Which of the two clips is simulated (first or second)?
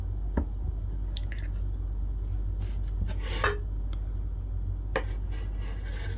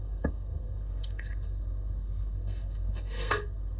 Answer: second